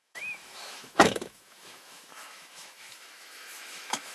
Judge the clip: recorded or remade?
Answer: remade